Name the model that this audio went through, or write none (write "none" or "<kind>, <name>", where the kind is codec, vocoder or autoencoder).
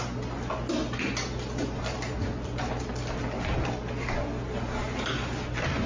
none